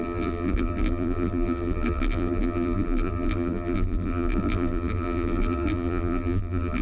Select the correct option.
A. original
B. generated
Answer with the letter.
B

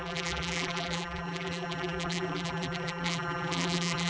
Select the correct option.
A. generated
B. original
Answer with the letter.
A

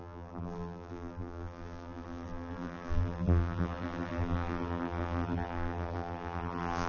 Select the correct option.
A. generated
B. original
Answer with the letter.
A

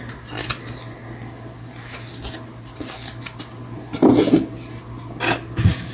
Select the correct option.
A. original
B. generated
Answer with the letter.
A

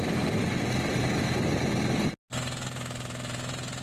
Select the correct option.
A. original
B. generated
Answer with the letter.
A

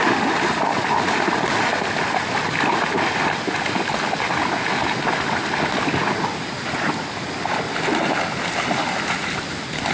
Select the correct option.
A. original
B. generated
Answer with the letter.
A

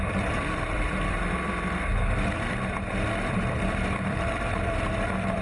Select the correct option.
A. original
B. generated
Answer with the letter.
B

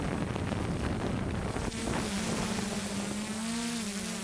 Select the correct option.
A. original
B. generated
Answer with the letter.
A